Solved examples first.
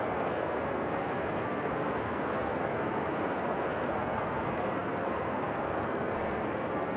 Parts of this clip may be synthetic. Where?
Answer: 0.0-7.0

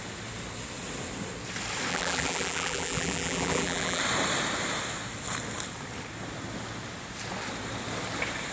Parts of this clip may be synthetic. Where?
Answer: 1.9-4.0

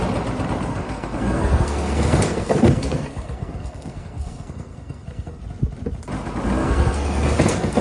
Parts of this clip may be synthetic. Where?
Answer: 0.7-5.4; 6.6-7.8